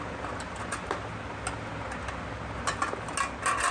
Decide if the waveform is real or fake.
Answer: real